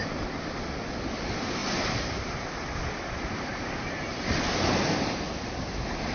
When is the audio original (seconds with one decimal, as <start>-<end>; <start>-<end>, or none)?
0.0-3.5